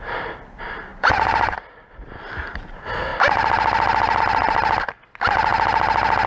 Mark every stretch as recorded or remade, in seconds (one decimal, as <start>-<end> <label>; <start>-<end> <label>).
0.0-0.9 recorded; 0.9-2.7 remade; 2.7-6.3 recorded